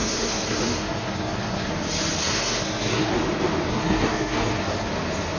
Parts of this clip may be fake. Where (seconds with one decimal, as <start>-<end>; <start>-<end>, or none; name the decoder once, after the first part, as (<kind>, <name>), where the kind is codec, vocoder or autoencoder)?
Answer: 0.0-1.7 (codec, SNAC); 2.2-3.1; 3.7-4.9